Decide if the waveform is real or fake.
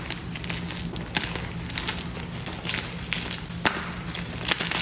real